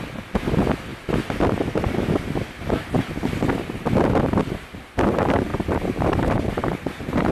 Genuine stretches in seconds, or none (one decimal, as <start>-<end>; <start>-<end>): 0.0-5.5